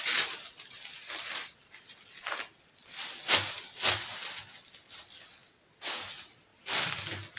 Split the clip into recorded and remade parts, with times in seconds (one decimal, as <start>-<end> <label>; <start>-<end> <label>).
0.0-7.4 recorded